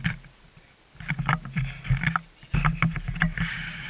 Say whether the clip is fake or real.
real